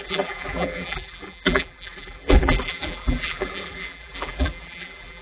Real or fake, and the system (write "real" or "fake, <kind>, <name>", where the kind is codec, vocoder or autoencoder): fake, vocoder, BigVGAN v2